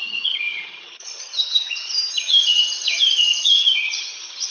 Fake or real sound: fake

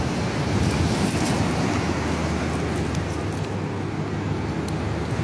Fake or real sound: real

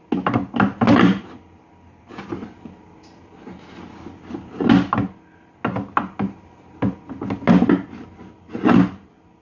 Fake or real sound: real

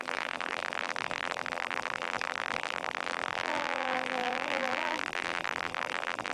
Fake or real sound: fake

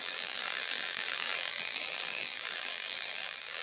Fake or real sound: fake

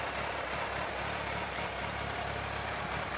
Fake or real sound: real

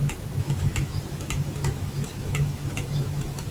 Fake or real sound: fake